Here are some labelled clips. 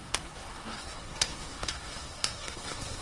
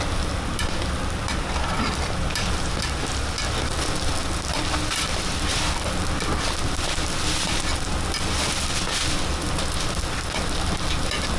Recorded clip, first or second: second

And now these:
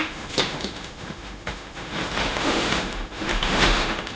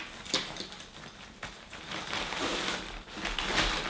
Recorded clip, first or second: second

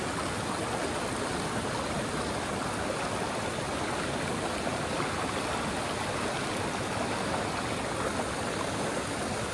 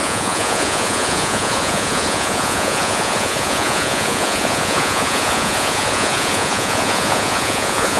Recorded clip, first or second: first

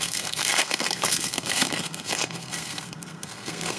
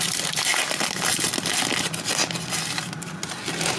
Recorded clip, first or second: second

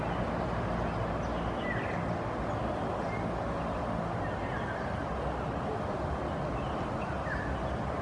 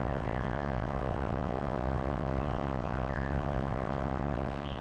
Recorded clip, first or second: first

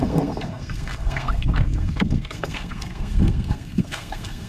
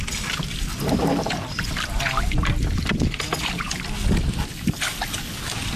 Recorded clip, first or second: second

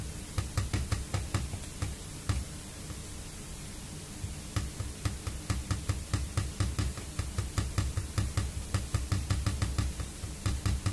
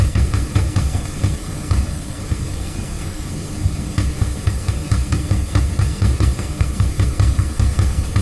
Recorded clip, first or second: first